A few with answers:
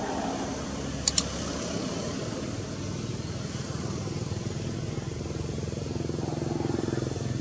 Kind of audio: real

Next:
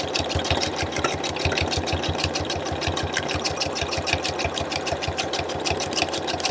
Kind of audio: fake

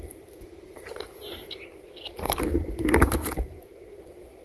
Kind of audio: fake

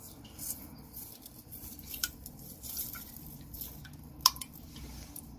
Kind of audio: fake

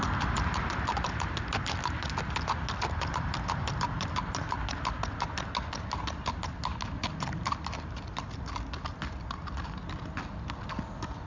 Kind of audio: real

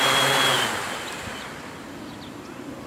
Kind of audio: real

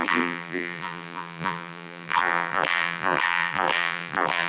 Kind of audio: fake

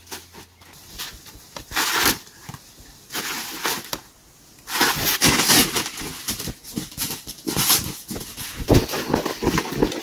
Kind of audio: real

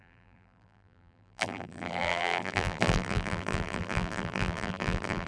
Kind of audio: fake